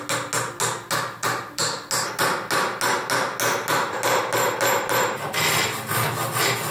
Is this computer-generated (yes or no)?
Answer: no